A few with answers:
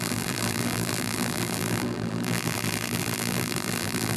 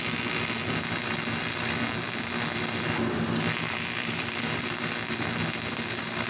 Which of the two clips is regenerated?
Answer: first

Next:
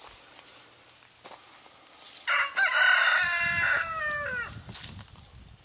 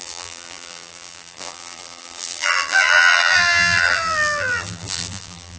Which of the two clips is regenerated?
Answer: second